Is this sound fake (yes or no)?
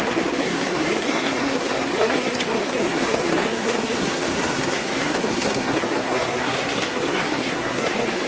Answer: yes